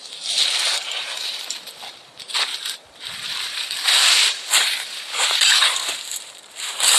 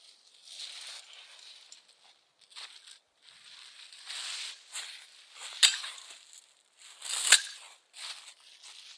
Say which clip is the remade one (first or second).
first